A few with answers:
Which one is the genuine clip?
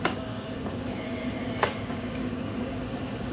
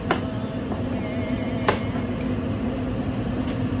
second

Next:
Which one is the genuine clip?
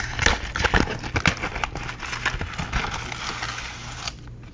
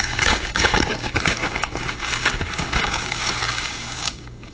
first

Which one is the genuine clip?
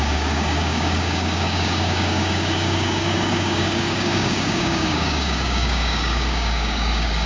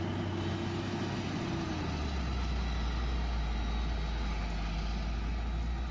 second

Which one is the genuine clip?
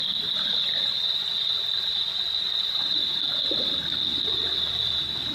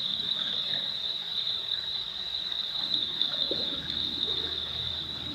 first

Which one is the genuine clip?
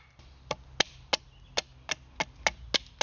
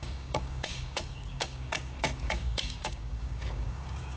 first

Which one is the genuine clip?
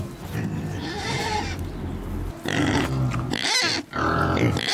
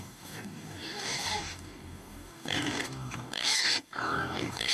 first